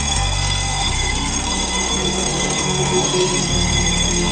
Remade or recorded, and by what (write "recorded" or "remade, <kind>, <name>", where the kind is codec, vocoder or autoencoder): remade, codec, SNAC